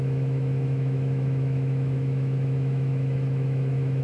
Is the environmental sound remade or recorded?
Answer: remade